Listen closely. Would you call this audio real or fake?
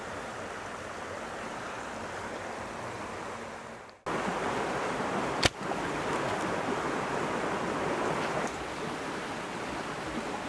real